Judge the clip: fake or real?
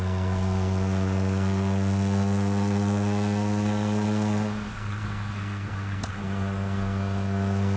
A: fake